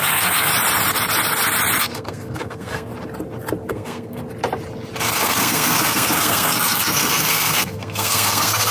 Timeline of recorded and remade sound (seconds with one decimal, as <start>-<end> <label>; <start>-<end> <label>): 0.0-0.5 remade; 0.5-1.8 recorded; 1.8-2.9 remade; 2.9-3.7 recorded; 3.7-4.2 remade; 4.2-5.2 recorded; 5.2-8.7 remade